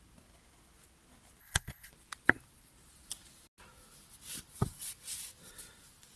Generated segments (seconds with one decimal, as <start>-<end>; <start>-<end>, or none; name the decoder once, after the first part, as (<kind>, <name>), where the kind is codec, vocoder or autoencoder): 1.4-1.9 (codec, HILCodec)